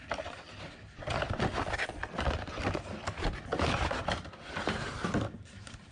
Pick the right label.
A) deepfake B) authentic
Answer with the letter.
B